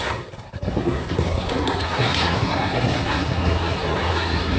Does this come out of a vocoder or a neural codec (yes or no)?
yes